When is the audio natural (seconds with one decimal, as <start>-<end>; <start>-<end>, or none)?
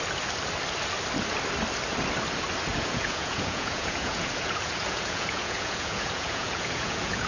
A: 0.0-2.7